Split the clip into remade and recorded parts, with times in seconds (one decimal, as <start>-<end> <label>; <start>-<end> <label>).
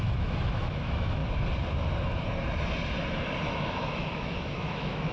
0.0-1.2 remade; 1.2-3.5 recorded; 3.5-5.1 remade